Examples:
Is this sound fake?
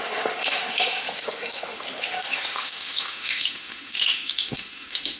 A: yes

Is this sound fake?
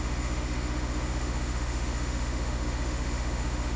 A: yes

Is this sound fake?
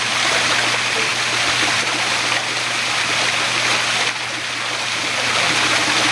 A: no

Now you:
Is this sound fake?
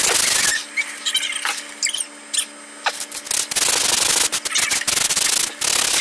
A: no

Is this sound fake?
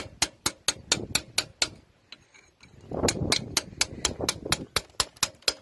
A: no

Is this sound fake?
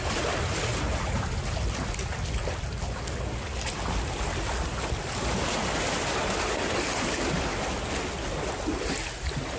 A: no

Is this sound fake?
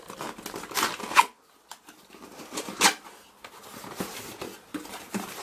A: no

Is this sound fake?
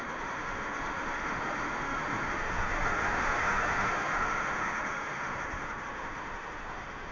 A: yes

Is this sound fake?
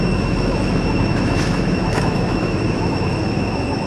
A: yes